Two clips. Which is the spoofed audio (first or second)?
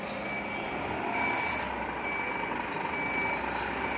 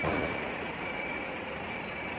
second